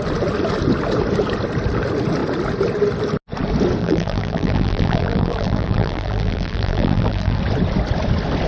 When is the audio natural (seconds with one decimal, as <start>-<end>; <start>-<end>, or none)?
0.0-3.8; 7.4-8.5

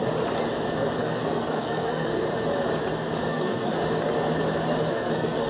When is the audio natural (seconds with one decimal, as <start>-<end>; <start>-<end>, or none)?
0.0-1.0; 2.1-3.3; 3.8-4.9

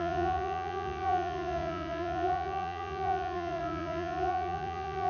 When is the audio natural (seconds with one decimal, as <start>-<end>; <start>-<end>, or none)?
none

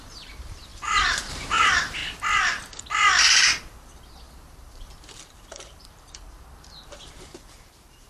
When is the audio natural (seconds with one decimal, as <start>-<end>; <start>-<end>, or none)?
2.0-4.3

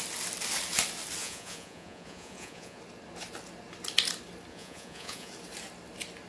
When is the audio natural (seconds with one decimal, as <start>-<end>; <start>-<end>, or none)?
0.0-1.2; 2.8-4.5; 5.3-6.3

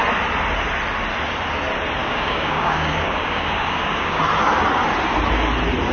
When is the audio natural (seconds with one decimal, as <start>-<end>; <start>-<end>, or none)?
0.0-2.0; 4.2-5.9